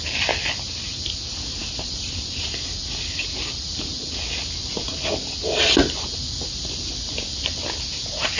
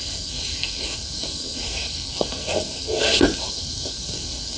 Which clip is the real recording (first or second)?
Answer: first